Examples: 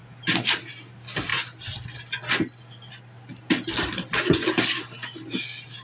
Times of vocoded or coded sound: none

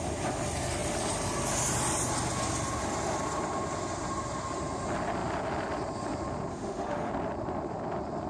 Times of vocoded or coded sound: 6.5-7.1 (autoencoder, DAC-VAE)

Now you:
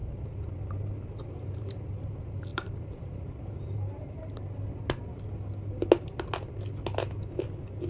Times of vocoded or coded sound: 0.0-1.9 (vocoder, BigVGAN v2); 2.5-4.5

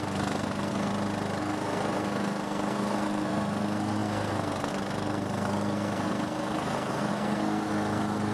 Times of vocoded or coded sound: 0.0-0.9 (codec, SNAC); 1.4-8.3

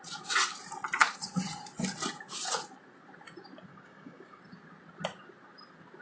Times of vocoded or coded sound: 3.7-4.4 (codec, DAC)

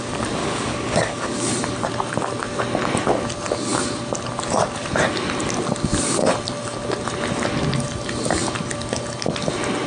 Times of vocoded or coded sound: 0.4-1.5 (codec, DAC)

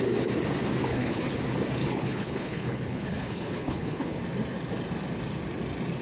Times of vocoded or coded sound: 0.9-1.4 (codec, HILCodec); 1.8-4.2

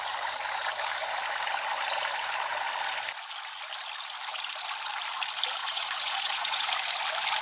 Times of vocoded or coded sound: 5.6-6.7 (vocoder, Vocos)